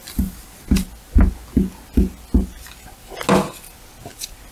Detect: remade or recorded recorded